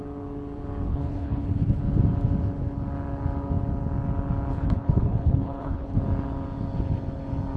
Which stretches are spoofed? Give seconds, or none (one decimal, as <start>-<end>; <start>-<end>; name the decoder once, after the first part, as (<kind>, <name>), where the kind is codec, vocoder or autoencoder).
0.9-1.8 (codec, HILCodec); 4.5-6.0

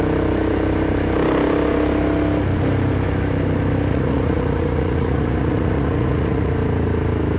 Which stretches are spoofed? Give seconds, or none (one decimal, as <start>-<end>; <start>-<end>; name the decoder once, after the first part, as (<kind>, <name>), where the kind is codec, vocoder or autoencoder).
3.9-6.5 (vocoder, Vocos)

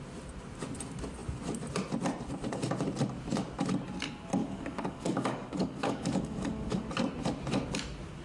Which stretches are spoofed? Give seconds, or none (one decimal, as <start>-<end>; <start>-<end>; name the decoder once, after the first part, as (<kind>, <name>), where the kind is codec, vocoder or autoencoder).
4.4-6.9 (codec, DAC)

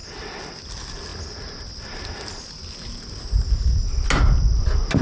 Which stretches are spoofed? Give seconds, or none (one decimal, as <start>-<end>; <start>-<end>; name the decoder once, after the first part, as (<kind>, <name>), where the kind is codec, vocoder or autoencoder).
none